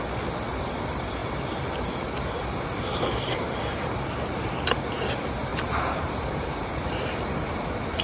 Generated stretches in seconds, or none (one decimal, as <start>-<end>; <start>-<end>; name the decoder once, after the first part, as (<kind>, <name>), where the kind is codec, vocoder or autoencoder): 5.5-7.3 (vocoder, BigVGAN v2)